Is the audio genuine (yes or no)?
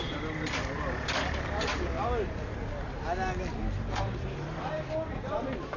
yes